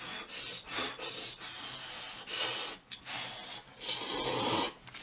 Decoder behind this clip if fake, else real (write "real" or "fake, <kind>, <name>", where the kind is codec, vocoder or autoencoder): real